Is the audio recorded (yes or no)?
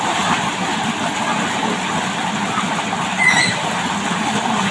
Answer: yes